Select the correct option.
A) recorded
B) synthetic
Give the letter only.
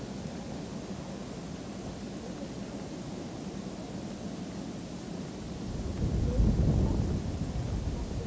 A